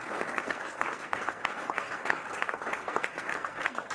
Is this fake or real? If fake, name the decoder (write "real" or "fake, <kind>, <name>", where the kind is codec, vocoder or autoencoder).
fake, codec, SNAC